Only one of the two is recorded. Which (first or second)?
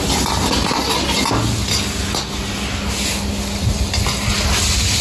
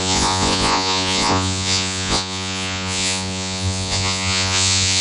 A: first